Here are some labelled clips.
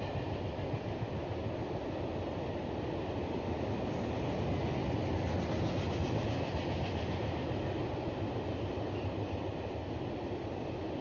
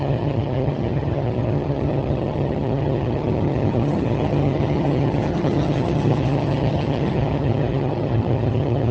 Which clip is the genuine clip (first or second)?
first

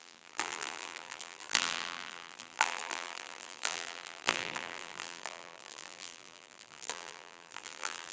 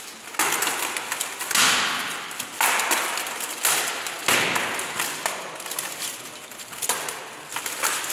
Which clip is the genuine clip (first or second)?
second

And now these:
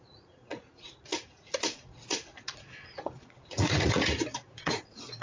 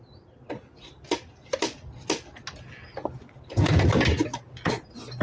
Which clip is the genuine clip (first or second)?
second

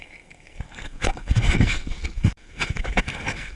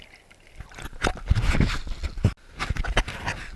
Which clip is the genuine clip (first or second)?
second